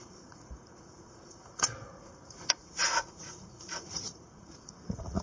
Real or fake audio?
fake